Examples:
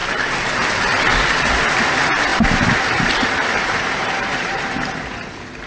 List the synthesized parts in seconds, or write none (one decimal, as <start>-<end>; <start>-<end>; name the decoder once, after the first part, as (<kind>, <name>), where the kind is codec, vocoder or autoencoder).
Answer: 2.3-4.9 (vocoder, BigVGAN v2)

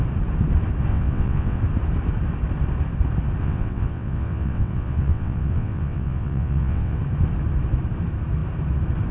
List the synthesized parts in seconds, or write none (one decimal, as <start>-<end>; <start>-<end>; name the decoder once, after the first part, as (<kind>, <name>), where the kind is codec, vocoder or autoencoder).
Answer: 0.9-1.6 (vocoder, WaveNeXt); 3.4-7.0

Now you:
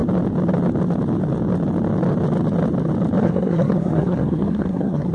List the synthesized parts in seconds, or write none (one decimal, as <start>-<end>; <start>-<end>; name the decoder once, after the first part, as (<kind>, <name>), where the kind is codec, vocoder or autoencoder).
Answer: 3.2-5.1 (codec, SNAC)